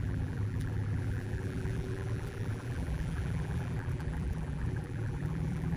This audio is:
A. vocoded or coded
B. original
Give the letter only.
A